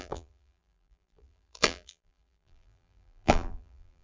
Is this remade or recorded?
remade